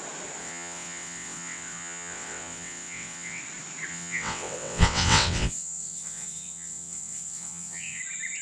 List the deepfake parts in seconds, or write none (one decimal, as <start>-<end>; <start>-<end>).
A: 0.4-3.4; 3.9-8.0